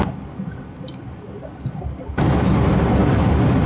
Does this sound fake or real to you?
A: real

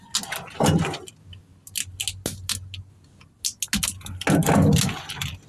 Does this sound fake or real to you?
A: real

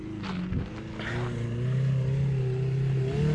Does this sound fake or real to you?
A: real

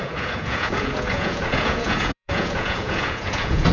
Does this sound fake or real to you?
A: fake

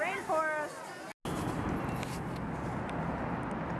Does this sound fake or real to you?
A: real